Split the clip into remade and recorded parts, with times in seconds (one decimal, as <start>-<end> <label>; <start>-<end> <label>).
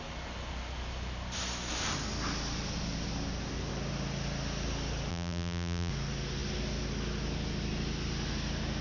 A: 0.0-5.1 recorded; 5.1-5.9 remade; 5.9-8.8 recorded